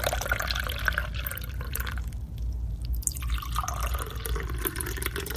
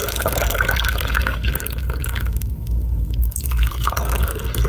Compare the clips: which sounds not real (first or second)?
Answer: second